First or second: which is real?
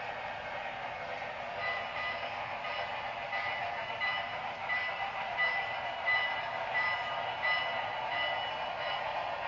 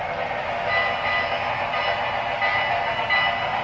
second